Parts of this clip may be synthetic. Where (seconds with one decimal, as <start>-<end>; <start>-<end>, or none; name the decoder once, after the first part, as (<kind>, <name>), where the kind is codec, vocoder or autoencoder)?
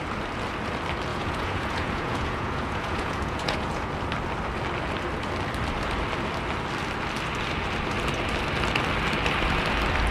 1.1-3.9 (vocoder, Vocos)